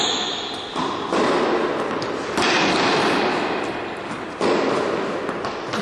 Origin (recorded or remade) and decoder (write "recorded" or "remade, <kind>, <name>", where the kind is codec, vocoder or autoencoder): recorded